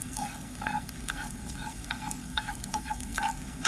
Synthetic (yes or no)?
yes